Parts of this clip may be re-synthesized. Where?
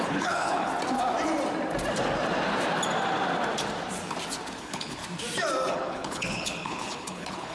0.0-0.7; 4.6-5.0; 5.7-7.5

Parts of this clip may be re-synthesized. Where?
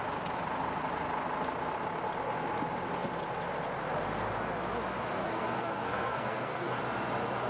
5.2-6.8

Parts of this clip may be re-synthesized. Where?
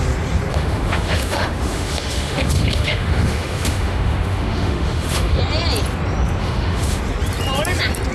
0.5-5.4; 6.4-7.0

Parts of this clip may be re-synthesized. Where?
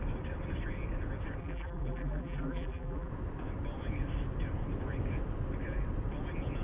1.4-3.1